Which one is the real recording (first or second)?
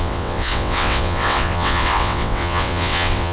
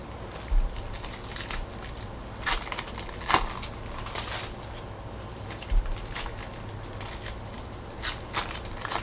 second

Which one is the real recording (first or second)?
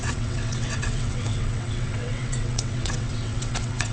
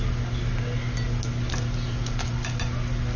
second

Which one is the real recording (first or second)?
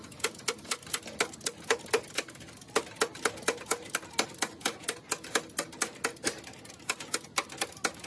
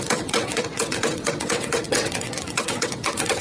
first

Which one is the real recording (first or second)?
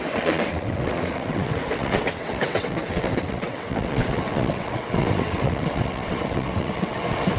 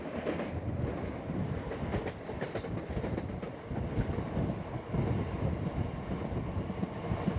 second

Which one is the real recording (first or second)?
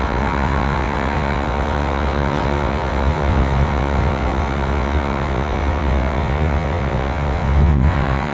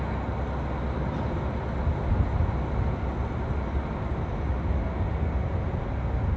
second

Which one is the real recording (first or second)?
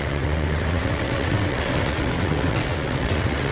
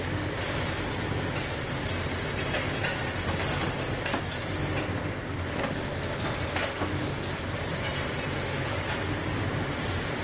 second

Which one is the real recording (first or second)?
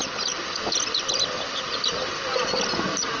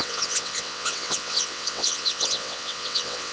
first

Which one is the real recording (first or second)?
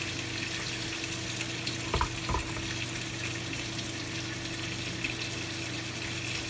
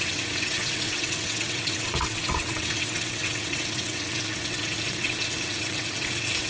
first